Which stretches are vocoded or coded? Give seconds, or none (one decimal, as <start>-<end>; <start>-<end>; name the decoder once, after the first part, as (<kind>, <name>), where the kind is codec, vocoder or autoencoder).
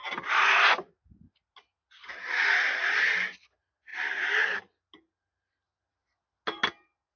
none